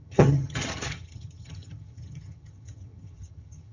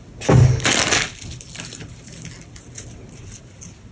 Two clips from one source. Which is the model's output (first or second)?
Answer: first